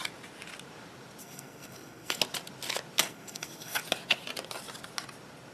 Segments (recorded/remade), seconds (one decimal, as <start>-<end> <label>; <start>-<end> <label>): 0.0-1.2 recorded; 1.2-2.2 remade; 2.2-3.0 recorded; 3.0-3.8 remade; 3.8-5.5 recorded